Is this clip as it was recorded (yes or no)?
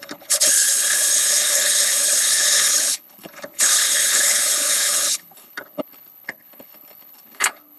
no